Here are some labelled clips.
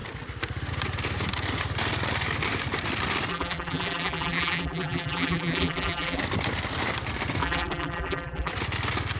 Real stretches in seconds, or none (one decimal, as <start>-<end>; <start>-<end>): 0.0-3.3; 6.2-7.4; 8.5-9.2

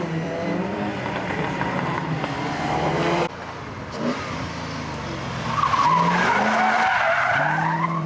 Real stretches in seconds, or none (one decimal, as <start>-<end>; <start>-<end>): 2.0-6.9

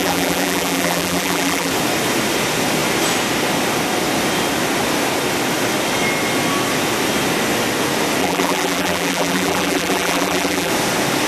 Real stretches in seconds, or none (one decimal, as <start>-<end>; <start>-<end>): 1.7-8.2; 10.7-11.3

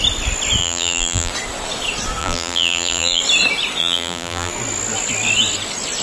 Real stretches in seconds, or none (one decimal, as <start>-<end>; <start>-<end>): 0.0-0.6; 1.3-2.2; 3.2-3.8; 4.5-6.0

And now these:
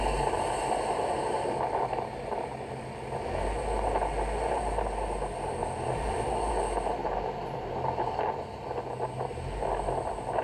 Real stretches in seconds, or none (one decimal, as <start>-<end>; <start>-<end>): 0.0-5.6; 6.5-7.0; 7.7-10.4